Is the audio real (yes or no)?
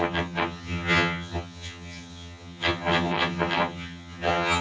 no